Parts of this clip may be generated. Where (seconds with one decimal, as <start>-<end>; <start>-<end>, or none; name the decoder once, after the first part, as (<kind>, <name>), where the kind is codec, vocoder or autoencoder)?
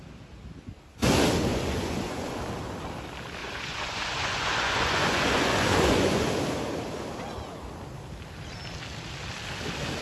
1.5-2.4 (vocoder, Vocos); 3.4-6.3